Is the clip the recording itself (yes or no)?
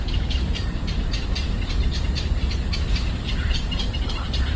no